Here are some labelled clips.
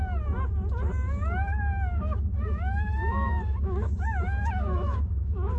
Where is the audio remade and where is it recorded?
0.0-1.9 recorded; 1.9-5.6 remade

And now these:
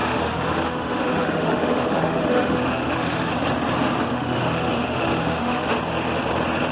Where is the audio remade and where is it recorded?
0.0-3.3 remade; 3.3-4.1 recorded; 4.1-5.8 remade; 5.8-6.7 recorded

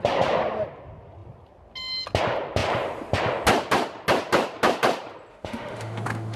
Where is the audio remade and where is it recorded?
0.0-5.3 recorded; 5.3-6.4 remade

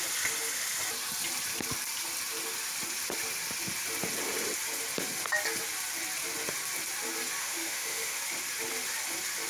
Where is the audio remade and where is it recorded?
0.0-7.4 recorded; 7.4-8.2 remade; 8.2-9.5 recorded